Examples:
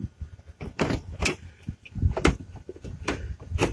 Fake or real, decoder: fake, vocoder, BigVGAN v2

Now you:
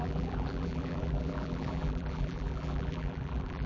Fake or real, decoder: fake, vocoder, BigVGAN v2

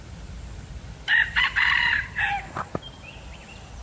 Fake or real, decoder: fake, vocoder, BigVGAN v2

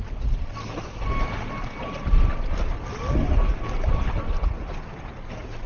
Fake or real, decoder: real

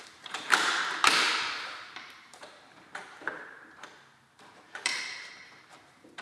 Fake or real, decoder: fake, vocoder, BigVGAN v2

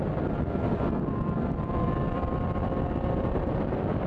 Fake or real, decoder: fake, vocoder, BigVGAN v2